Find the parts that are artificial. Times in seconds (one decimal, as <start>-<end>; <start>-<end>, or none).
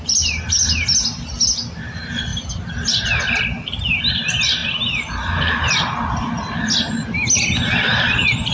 none